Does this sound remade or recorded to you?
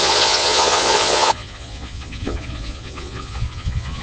remade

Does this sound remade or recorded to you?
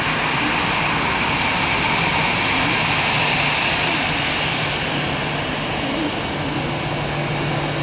recorded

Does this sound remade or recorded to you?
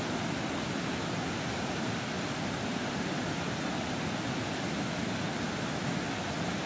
recorded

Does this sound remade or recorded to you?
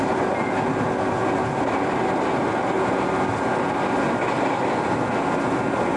recorded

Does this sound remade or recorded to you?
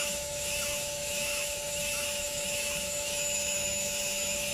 remade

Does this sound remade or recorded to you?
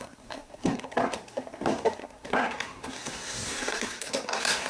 remade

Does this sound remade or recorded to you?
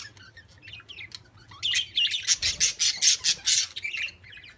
recorded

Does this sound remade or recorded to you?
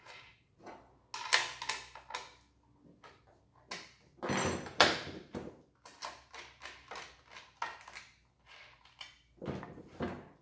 recorded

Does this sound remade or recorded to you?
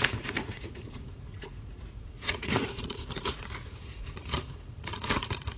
remade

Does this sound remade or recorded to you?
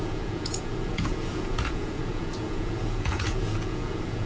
remade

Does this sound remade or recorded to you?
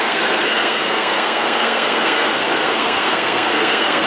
remade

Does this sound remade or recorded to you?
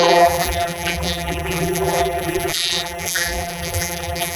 remade